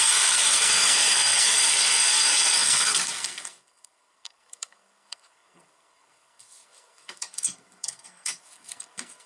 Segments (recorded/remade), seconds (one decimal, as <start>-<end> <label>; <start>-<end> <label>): 0.0-9.3 remade